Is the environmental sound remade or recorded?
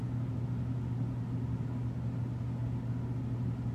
recorded